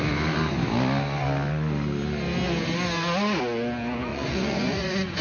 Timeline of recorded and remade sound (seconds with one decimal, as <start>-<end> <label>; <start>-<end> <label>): 0.0-4.1 recorded; 4.1-5.2 remade